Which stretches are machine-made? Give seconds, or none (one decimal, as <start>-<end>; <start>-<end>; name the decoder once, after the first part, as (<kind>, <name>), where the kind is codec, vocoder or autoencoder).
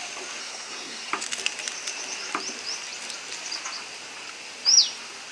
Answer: 0.4-1.1 (codec, SNAC)